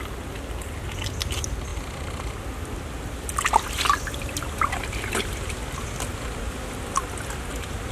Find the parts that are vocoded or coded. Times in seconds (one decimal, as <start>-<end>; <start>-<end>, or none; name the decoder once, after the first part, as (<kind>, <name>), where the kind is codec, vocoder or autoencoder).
none